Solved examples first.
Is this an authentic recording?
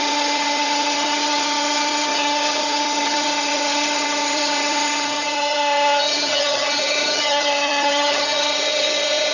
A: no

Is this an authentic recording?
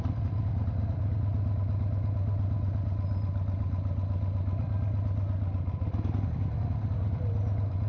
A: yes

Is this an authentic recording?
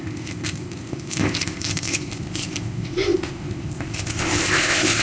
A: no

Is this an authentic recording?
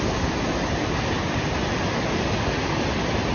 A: yes